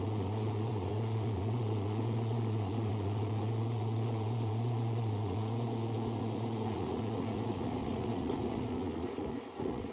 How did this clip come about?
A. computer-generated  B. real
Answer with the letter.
A